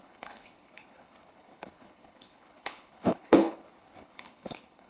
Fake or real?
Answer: fake